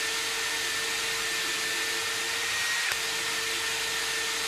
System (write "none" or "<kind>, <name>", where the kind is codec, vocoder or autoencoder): none